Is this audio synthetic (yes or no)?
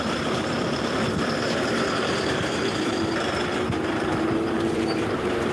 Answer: yes